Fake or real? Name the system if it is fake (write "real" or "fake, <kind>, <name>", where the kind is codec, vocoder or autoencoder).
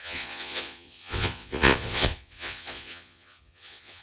fake, vocoder, Vocos